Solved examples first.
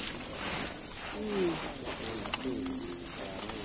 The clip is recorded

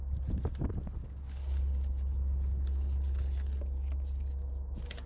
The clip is recorded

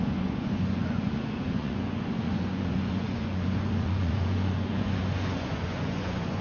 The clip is remade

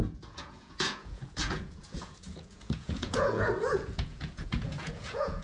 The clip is remade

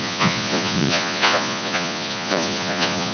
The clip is remade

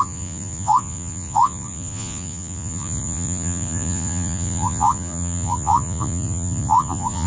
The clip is remade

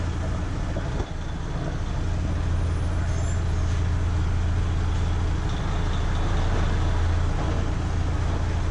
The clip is recorded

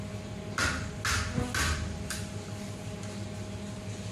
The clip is recorded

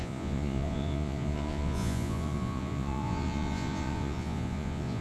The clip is remade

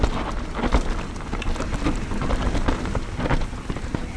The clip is recorded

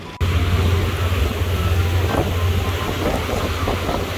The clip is recorded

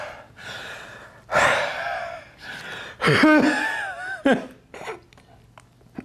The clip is recorded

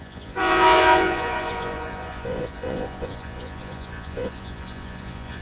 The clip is remade